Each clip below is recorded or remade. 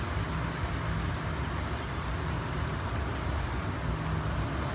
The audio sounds recorded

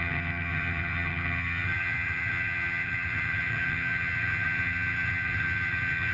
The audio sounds remade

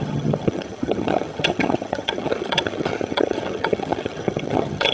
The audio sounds remade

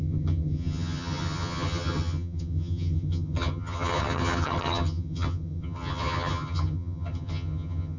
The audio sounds remade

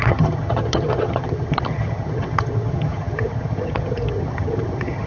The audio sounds remade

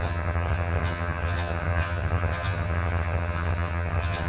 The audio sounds remade